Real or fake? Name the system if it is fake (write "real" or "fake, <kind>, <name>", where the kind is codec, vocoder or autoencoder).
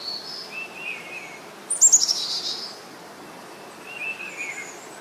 real